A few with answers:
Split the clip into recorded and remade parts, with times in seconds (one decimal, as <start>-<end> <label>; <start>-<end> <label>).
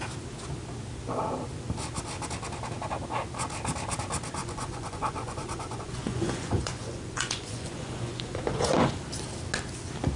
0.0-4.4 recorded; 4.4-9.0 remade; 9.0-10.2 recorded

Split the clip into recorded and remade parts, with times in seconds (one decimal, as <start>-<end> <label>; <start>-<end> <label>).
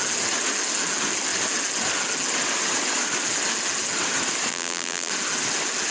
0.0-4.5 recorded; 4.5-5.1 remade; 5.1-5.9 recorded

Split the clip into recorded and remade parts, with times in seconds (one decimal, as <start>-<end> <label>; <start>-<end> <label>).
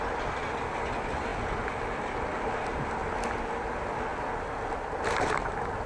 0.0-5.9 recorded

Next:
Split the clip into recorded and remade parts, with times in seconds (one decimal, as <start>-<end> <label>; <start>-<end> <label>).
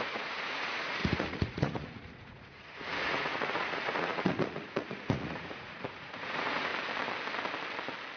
0.0-6.7 remade; 6.7-8.2 recorded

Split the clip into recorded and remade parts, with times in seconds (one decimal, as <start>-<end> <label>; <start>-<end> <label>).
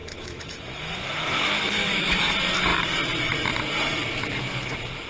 0.0-2.2 remade; 2.2-5.1 recorded